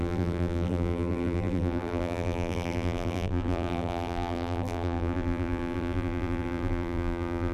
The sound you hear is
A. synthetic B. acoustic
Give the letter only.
A